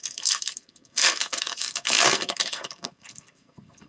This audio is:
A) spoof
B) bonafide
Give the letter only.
A